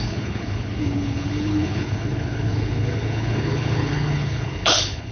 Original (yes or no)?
no